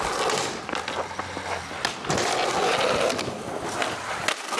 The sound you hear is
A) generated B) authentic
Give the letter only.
B